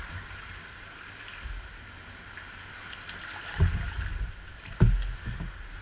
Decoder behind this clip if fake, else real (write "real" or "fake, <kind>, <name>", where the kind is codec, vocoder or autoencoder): real